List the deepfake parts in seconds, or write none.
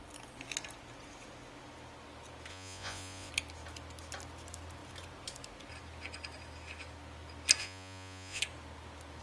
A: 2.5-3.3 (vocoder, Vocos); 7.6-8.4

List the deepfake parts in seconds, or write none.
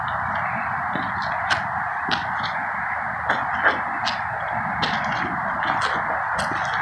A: 2.2-2.7 (vocoder, Vocos)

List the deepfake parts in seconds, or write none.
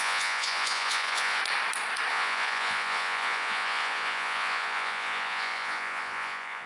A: 0.0-1.4 (vocoder, Vocos); 2.1-6.7